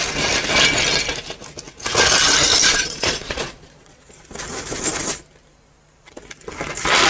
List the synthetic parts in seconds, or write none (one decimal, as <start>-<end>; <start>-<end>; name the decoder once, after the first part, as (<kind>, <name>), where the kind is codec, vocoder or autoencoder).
2.6-4.2 (vocoder, Vocos)